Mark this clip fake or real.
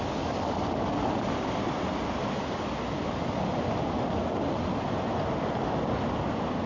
real